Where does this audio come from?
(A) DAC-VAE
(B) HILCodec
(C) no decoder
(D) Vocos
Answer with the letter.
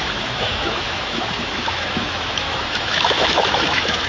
A